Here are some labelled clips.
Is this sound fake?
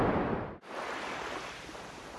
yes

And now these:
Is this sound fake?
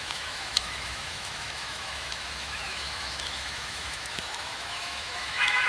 yes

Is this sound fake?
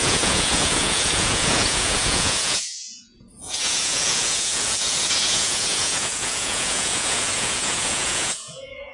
yes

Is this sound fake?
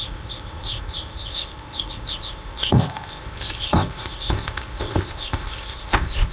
yes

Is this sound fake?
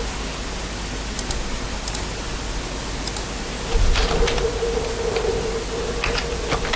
no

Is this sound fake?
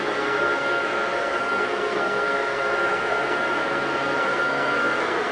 yes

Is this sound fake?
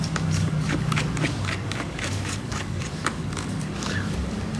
yes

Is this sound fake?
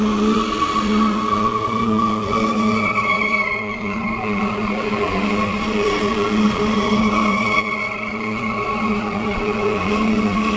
yes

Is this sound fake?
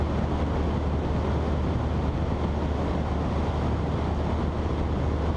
no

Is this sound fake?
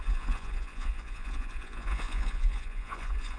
yes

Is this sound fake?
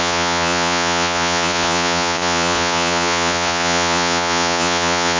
yes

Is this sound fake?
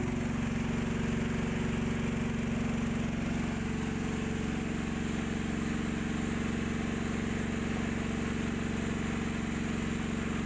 no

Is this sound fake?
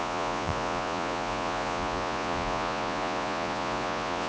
yes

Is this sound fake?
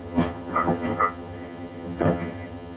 yes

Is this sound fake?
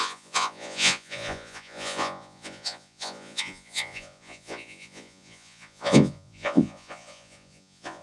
yes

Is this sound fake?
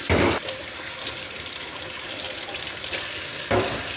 no